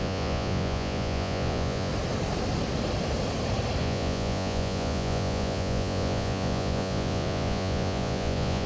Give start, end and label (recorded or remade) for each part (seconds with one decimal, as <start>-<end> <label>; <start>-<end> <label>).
0.0-1.9 remade; 1.9-3.8 recorded; 3.8-8.7 remade